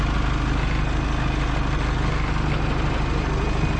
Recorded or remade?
recorded